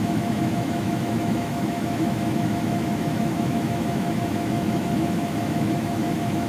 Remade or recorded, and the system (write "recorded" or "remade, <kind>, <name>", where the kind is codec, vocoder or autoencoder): remade, autoencoder, DAC-VAE